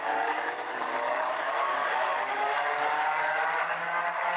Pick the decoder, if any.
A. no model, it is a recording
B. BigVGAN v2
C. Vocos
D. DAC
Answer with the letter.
D